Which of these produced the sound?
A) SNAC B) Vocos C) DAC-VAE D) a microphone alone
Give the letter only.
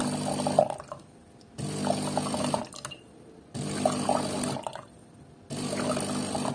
D